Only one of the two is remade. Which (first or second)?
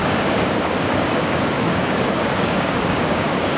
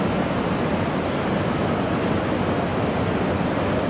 first